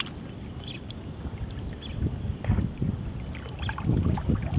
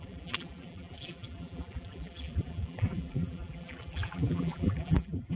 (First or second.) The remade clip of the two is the second